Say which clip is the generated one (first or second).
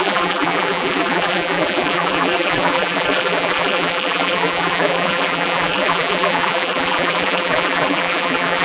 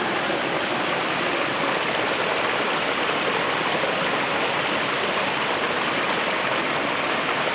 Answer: first